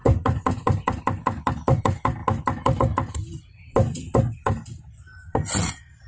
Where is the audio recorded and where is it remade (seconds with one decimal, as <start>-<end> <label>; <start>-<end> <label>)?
0.0-6.1 recorded